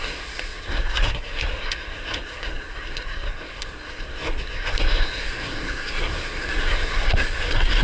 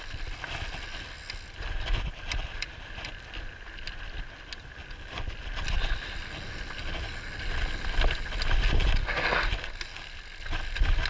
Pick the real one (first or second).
second